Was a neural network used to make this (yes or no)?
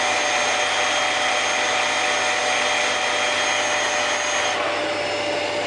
no